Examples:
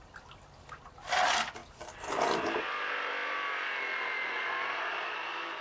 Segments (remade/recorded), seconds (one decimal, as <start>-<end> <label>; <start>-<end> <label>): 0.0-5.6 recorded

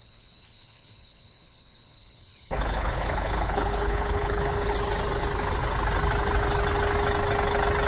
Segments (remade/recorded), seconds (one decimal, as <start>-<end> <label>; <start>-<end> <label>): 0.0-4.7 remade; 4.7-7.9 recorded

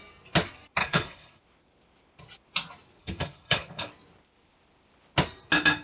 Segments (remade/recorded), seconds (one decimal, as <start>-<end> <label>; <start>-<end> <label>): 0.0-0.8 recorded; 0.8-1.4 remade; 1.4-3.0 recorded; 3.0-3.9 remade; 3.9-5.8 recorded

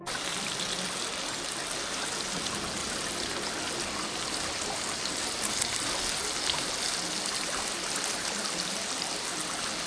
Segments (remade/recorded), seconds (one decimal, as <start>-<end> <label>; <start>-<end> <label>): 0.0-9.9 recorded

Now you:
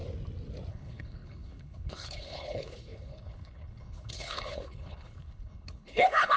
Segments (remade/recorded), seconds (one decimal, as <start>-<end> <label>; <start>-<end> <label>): 0.0-0.7 recorded; 0.7-6.4 remade

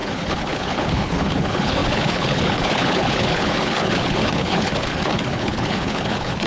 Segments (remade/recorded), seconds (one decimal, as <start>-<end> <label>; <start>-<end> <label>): 0.0-6.5 remade

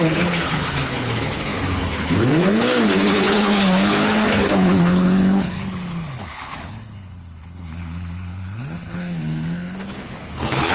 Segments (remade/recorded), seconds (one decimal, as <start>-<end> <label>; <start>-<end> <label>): 0.0-10.7 remade